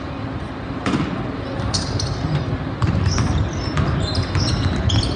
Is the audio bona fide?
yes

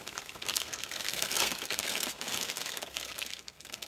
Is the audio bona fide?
no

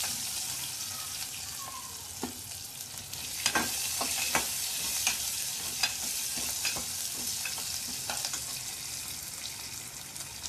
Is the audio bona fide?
yes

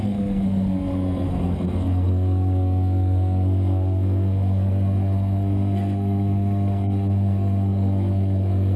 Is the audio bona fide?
no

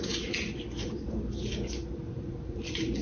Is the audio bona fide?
yes